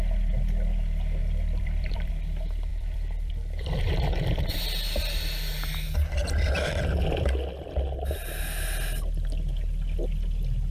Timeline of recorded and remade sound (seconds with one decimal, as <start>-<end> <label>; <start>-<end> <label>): 0.0-1.2 recorded; 1.2-2.1 remade; 2.1-2.7 recorded; 2.7-3.8 remade; 3.8-6.2 recorded; 6.2-6.7 remade; 6.7-10.7 recorded